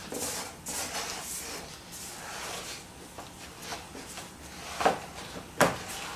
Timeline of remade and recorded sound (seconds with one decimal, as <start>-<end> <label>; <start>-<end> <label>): 0.0-6.2 recorded

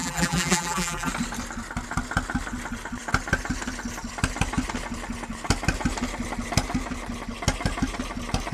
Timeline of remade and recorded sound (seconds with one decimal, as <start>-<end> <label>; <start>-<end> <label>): 0.0-1.1 remade; 1.1-8.5 recorded

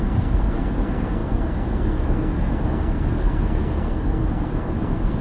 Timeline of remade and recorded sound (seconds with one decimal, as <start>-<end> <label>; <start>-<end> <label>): 0.0-5.2 remade

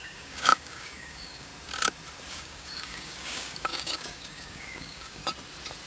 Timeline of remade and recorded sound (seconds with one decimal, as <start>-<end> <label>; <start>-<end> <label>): 0.0-1.5 remade; 1.5-2.3 recorded; 2.3-5.2 remade; 5.2-5.9 recorded

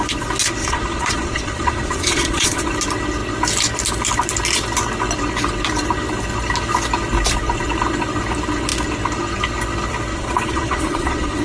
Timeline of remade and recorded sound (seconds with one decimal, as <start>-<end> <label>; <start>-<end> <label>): 0.0-0.6 recorded; 0.6-2.6 remade; 2.6-10.1 recorded; 10.1-11.4 remade

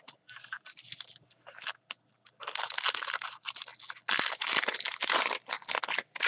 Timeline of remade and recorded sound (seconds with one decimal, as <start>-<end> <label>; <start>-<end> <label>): 0.0-6.3 recorded